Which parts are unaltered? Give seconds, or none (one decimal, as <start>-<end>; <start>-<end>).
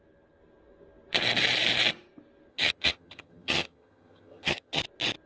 0.0-2.5; 4.8-5.3